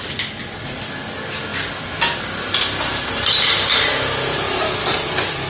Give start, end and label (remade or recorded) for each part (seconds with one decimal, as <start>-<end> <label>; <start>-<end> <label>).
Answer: 0.0-5.5 recorded